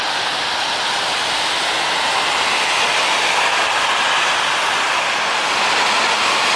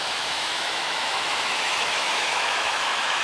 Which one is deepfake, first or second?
second